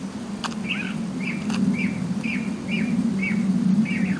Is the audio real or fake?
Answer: real